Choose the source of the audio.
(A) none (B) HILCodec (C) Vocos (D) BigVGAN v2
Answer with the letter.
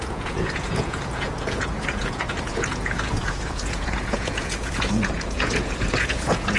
C